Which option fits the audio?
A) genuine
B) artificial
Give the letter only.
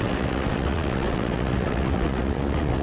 B